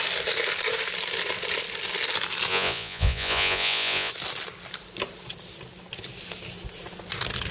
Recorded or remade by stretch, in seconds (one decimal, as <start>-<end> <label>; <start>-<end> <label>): 0.0-2.5 recorded; 2.5-4.1 remade; 4.1-7.5 recorded